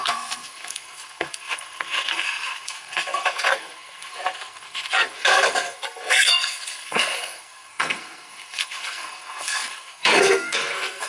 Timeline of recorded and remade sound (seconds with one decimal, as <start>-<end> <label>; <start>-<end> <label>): 0.0-11.1 remade